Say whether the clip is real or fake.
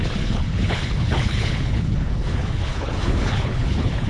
fake